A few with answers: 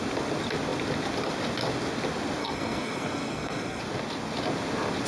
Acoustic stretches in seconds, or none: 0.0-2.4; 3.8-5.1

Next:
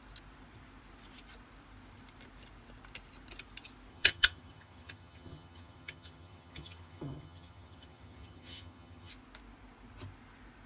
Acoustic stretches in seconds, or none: 0.0-3.9; 9.1-10.7

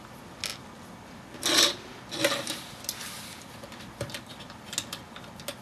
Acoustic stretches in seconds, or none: 0.0-5.6

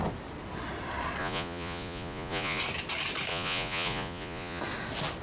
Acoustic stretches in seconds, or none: 0.0-1.2; 2.6-3.3; 4.6-5.2

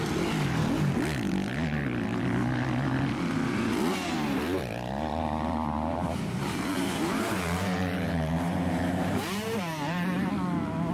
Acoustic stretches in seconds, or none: 0.0-5.1; 10.3-10.9